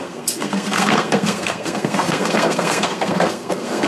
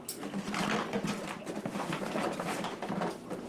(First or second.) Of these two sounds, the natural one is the second